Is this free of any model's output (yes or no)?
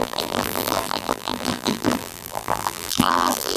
no